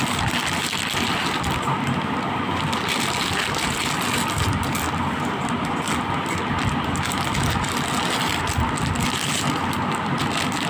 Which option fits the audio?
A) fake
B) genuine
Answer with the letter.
B